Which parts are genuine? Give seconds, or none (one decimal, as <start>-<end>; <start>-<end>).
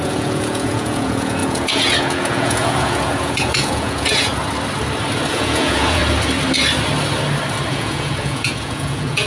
4.3-5.3; 6.0-7.7